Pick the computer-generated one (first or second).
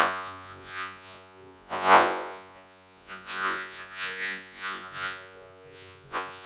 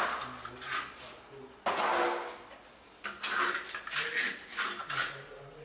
first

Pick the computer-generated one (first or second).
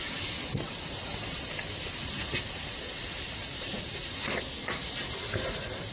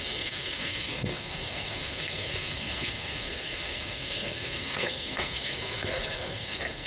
second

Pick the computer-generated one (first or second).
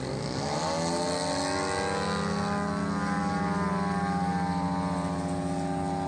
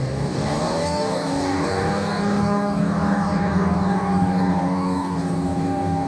second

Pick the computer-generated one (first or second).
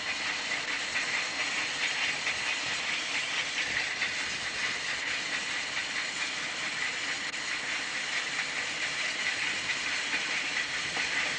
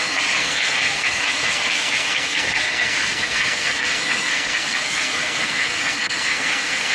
second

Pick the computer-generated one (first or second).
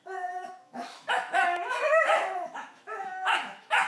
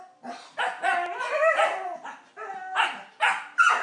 first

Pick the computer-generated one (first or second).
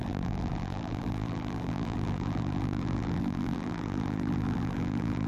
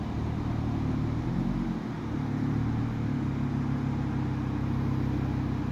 first